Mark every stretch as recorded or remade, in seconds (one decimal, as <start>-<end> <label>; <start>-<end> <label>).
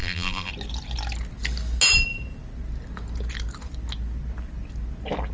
0.0-0.5 remade; 0.5-5.3 recorded